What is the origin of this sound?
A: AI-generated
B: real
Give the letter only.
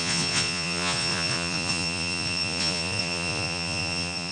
A